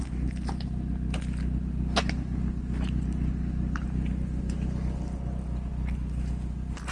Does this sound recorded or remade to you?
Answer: recorded